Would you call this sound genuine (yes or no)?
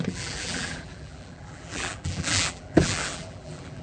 no